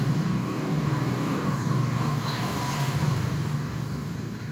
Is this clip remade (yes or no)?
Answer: yes